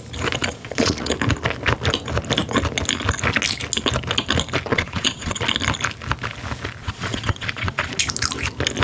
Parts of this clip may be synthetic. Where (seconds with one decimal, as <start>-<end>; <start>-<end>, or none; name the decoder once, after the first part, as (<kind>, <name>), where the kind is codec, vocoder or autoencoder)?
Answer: 0.4-1.1 (vocoder, Vocos); 4.7-5.4; 6.8-8.0